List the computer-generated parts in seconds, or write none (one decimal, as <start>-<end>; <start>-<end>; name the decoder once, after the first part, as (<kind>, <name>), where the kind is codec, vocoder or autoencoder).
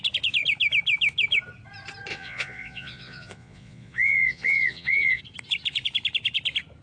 2.1-5.2 (vocoder, Vocos)